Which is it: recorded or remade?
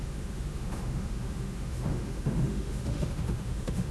remade